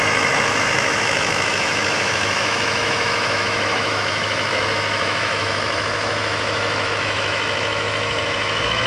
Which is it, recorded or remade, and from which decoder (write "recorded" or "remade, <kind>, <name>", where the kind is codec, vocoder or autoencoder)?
remade, autoencoder, DAC-VAE